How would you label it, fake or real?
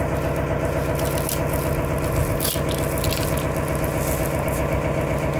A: real